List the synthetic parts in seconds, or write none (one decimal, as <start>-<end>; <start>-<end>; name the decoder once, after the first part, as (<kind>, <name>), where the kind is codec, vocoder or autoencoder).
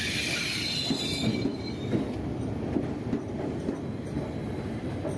none